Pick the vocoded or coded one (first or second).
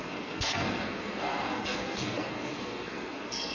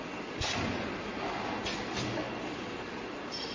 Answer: first